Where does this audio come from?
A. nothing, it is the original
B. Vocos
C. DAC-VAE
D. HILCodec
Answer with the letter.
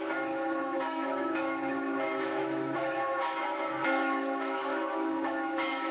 C